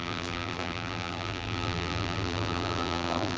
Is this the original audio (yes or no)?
no